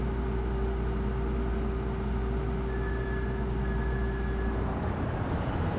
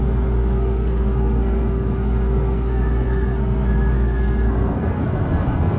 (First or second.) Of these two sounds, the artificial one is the second